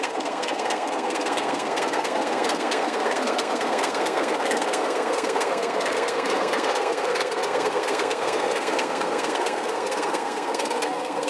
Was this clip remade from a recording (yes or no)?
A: yes